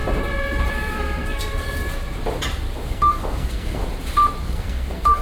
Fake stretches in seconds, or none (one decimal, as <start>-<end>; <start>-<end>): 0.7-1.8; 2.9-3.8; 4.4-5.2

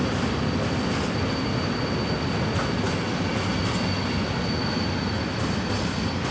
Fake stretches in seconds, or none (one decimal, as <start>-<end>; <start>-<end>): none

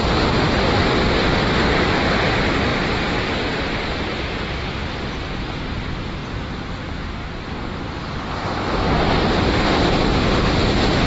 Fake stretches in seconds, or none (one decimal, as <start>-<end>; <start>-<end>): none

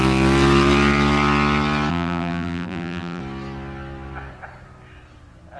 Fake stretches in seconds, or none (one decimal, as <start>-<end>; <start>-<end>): 1.9-3.2

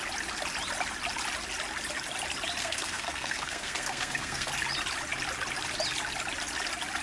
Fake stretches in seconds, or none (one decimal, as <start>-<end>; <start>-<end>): 2.6-4.5